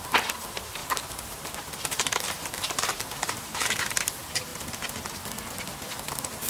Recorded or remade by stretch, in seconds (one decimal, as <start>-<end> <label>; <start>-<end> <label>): 0.0-0.8 recorded; 0.8-3.9 remade; 3.9-6.5 recorded